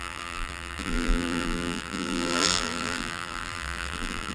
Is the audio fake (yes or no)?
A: yes